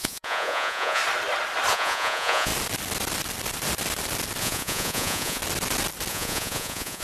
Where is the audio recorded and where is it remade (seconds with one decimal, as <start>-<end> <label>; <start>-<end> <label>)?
0.0-1.0 remade; 1.0-1.7 recorded; 1.7-2.5 remade; 2.5-4.4 recorded; 4.4-5.4 remade; 5.4-6.1 recorded; 6.1-7.0 remade